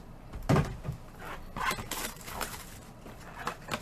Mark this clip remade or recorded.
recorded